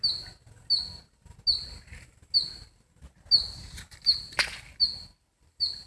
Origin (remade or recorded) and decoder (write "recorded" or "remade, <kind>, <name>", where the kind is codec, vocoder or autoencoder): recorded